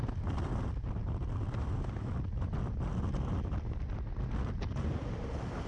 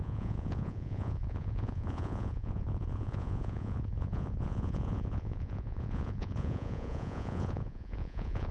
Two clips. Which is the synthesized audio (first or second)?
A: second